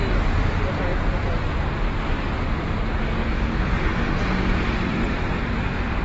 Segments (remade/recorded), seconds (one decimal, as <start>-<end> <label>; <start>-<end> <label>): 0.0-0.9 recorded; 0.9-1.6 remade; 1.6-4.9 recorded; 4.9-6.0 remade